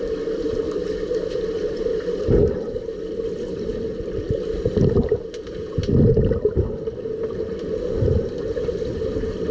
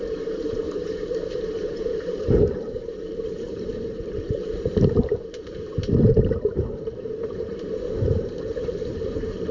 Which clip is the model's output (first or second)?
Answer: second